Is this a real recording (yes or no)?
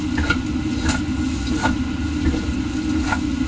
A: yes